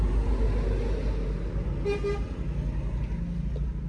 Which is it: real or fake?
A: real